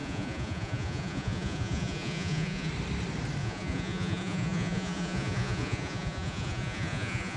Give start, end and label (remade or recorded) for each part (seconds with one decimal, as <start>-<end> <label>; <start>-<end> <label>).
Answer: 0.0-2.7 remade; 2.7-3.4 recorded; 3.4-7.4 remade